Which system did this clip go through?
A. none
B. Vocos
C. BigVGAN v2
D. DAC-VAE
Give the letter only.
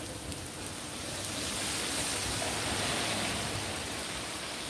A